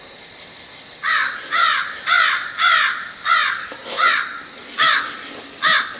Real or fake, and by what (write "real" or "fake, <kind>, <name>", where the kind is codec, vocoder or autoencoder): real